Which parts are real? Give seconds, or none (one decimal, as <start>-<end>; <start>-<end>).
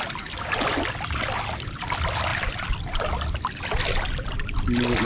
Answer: 0.0-5.1